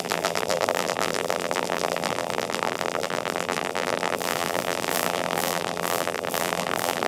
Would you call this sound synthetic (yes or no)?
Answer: yes